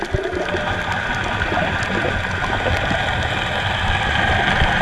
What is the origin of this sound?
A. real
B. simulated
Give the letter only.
A